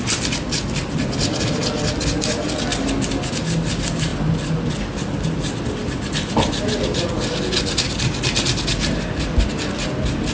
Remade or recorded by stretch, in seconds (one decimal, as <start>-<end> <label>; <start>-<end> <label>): 0.0-10.3 recorded